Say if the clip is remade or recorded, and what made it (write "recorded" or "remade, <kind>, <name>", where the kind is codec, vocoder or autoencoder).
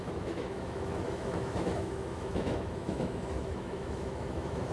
remade, autoencoder, DAC-VAE